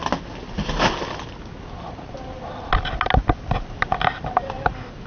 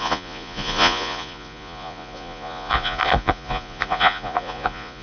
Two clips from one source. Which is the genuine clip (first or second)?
first